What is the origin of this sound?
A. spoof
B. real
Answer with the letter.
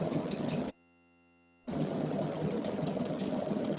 A